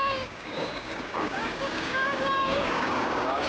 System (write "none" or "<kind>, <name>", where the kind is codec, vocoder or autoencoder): codec, DAC